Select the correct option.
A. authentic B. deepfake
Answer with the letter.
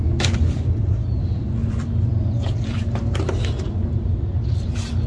B